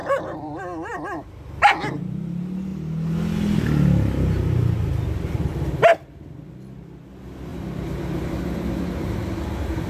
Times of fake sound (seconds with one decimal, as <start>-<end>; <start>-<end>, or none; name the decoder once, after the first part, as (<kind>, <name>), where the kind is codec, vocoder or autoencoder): 0.0-0.6 (vocoder, BigVGAN v2); 7.5-8.4